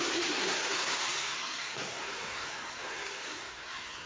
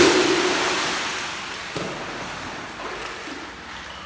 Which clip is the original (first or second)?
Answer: second